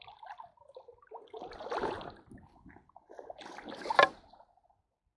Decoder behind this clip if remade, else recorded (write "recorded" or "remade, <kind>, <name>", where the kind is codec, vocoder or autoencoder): recorded